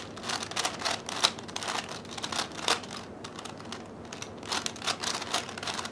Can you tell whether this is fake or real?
real